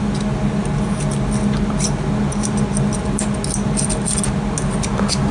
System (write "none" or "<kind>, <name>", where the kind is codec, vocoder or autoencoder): none